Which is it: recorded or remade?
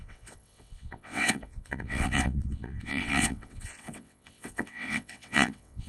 remade